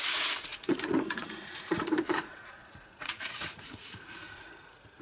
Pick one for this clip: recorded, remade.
remade